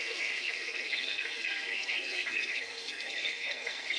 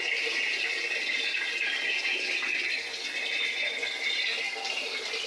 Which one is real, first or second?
second